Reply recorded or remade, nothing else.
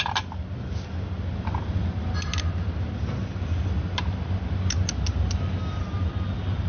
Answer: recorded